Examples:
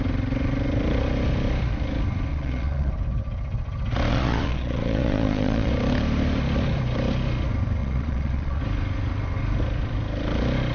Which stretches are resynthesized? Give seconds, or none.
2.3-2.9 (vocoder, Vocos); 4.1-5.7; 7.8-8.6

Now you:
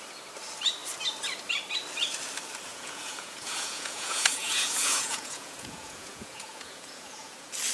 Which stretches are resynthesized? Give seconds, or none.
2.7-7.3 (vocoder, Vocos)

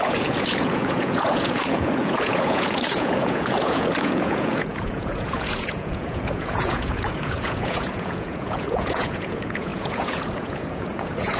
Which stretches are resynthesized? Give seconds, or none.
0.0-11.4 (vocoder, Vocos)

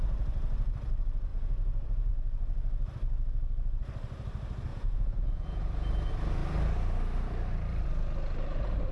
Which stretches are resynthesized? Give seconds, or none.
1.3-2.1 (vocoder, Vocos); 4.7-5.6

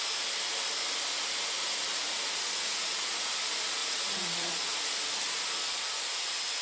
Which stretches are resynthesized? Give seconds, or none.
1.9-3.3 (vocoder, Vocos); 3.8-4.9